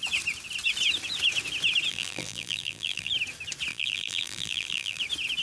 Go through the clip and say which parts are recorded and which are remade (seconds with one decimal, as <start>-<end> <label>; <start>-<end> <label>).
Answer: 0.0-1.9 recorded; 1.9-3.1 remade; 3.1-3.7 recorded; 3.7-5.0 remade; 5.0-5.4 recorded